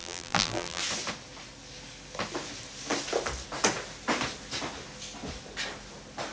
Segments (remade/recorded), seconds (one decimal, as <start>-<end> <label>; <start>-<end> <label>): 0.0-0.8 remade; 0.8-6.3 recorded